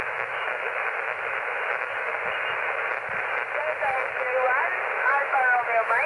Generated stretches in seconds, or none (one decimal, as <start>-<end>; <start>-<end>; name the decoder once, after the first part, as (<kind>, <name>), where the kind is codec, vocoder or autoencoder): 0.0-2.1 (autoencoder, DAC-VAE); 4.9-6.1